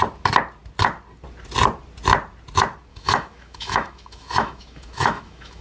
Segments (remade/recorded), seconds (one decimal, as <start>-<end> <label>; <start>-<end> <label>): 0.0-2.9 recorded; 2.9-5.6 remade